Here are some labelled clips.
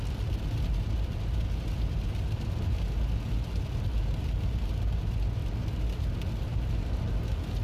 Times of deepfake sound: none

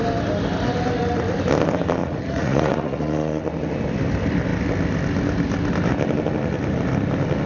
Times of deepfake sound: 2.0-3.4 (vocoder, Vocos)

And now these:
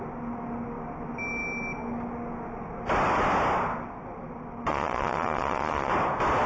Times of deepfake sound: 4.7-5.9 (vocoder, Vocos)